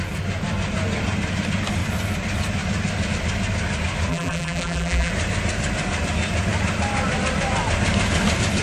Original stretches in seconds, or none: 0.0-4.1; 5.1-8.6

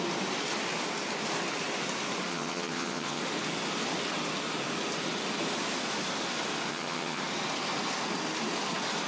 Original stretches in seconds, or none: 0.0-2.3; 3.2-6.7; 7.2-9.1

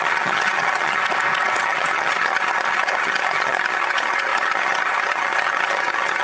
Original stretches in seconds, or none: 1.0-1.6

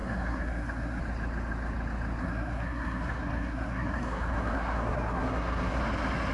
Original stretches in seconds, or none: 1.0-2.2; 5.8-6.3